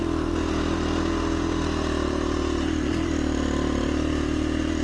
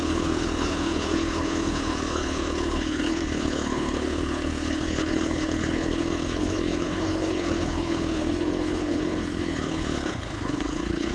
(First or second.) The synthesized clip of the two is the second